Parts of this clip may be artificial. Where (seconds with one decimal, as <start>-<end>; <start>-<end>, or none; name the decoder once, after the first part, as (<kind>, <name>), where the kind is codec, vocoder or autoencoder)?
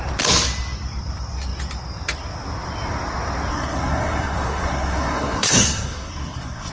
3.5-6.7 (codec, SNAC)